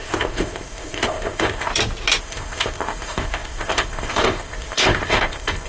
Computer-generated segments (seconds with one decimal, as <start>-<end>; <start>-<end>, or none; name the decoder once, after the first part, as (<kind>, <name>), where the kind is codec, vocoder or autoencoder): 0.0-1.7 (codec, ZipCodec); 2.2-5.7